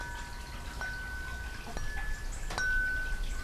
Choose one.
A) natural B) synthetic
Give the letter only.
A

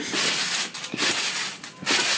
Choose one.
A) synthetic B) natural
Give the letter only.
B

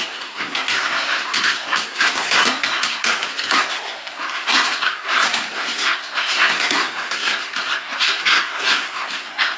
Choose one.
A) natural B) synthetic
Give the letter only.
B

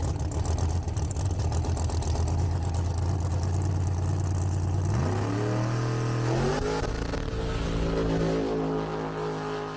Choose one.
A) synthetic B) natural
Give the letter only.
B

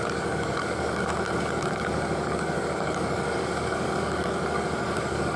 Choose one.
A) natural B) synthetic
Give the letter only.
B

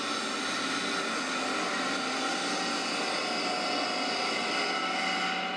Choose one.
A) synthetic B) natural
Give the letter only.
B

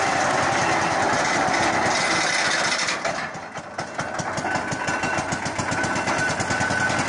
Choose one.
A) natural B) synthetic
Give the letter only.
A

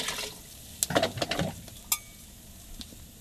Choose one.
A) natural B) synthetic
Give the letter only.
A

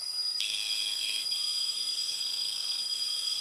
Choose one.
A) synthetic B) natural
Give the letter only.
A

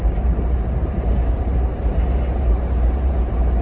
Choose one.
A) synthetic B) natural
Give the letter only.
A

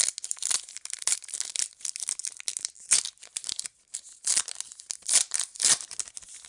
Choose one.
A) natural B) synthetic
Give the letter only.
A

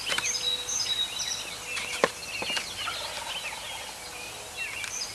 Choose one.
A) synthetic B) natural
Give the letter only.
A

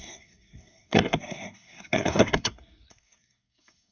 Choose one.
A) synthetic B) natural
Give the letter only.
A